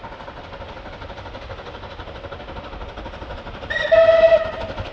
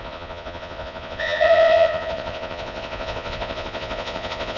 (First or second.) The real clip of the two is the first